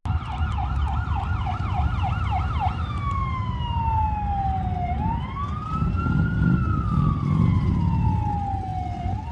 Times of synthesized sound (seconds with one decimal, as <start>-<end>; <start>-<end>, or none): none